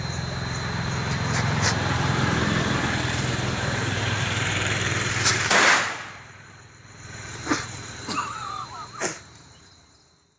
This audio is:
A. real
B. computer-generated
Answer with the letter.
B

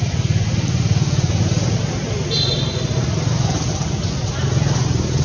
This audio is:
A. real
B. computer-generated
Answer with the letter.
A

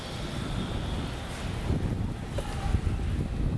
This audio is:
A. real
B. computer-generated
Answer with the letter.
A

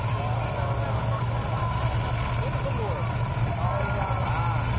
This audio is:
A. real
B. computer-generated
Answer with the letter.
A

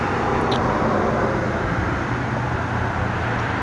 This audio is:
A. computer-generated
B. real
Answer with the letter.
B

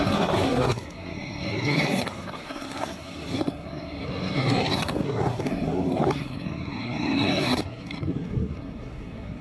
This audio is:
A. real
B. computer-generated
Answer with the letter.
B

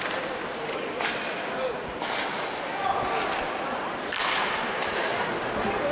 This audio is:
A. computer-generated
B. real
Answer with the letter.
B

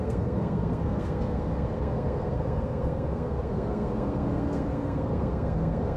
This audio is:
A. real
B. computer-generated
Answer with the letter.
B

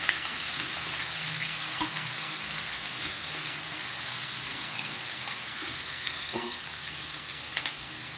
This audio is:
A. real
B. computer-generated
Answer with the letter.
B